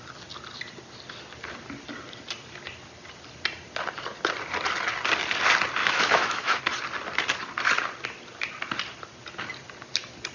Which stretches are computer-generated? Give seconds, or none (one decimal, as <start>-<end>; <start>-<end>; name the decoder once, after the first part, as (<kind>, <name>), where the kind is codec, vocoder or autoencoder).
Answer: 5.8-6.6 (autoencoder, DAC-VAE)